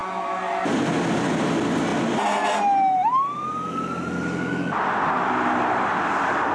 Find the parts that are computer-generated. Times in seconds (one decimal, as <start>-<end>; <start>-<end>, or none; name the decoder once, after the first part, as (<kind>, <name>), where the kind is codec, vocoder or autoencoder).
none